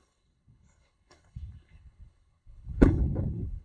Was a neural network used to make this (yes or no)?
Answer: yes